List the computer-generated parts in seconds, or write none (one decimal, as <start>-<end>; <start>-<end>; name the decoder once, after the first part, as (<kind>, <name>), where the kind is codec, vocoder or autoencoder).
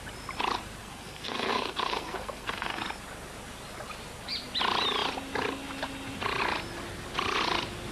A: 0.8-2.8 (codec, SNAC)